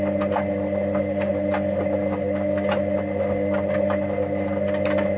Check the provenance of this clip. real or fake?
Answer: real